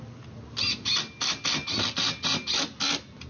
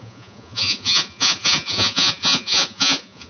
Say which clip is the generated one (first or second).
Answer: second